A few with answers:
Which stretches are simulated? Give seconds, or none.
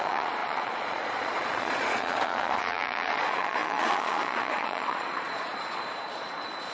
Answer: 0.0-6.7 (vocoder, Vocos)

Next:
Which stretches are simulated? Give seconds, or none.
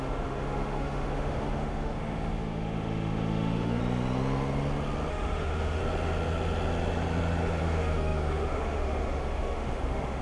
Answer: 0.0-3.8 (autoencoder, DAC-VAE); 5.1-5.8; 7.6-10.2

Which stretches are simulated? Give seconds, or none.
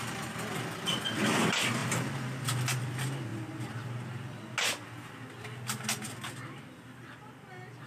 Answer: none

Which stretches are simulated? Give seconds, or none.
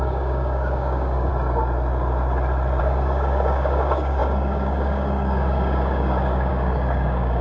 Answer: 0.0-1.3 (codec, DAC); 2.8-7.4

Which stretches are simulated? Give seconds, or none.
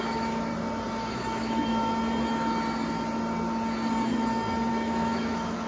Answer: 0.0-0.5 (autoencoder, DAC-VAE); 1.1-1.8; 4.7-5.7